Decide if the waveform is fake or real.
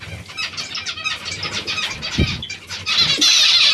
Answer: real